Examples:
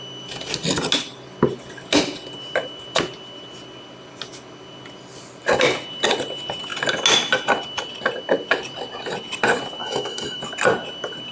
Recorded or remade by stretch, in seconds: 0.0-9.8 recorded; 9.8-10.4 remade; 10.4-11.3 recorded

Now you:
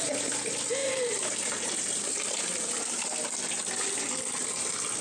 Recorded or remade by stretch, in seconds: 0.0-0.8 recorded; 0.8-3.3 remade; 3.3-5.0 recorded

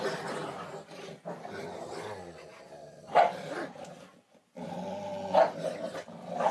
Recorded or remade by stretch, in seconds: 0.0-2.5 recorded; 2.5-4.4 remade; 4.4-6.5 recorded